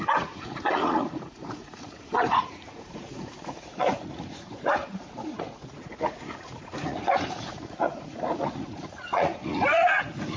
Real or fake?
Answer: fake